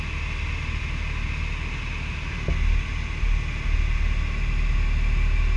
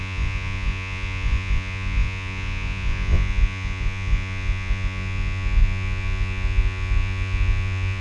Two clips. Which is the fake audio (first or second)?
second